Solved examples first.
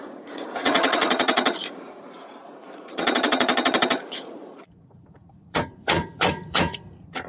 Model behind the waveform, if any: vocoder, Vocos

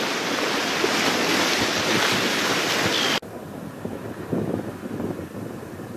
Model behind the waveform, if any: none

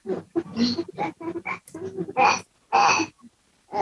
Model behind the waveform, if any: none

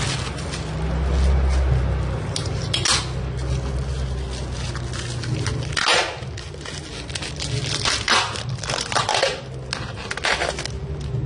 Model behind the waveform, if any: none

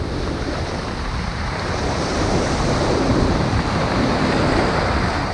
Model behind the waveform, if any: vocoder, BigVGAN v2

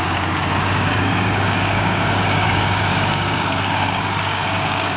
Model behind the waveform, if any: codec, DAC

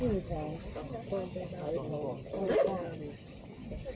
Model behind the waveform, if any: none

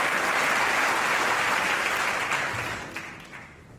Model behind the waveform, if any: none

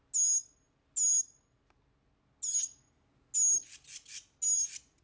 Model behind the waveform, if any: none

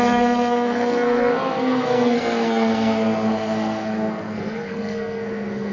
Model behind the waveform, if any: codec, SNAC